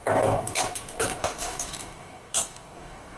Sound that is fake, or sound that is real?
fake